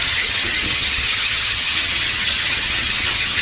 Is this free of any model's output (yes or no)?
no